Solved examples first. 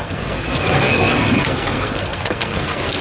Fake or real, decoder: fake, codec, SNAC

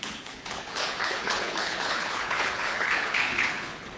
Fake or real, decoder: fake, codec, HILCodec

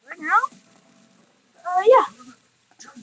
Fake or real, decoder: fake, vocoder, BigVGAN v2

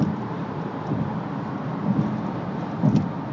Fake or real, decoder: real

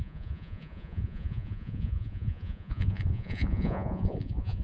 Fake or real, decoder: fake, vocoder, Vocos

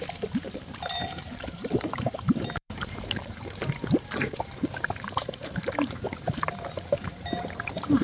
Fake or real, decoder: fake, vocoder, BigVGAN v2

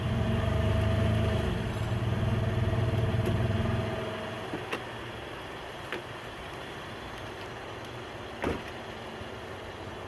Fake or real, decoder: real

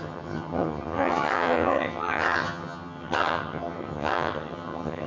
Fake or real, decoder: fake, vocoder, HiFi-GAN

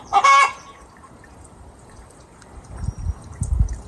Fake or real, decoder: fake, vocoder, BigVGAN v2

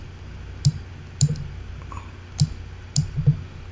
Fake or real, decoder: real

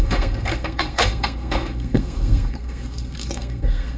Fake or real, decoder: fake, codec, SNAC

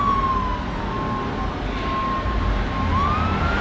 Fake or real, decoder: real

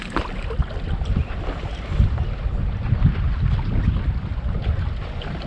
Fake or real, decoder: real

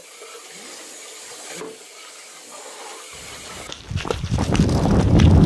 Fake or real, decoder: real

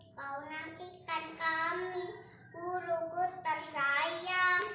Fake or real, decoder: real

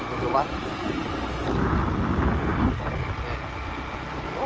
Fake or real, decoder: real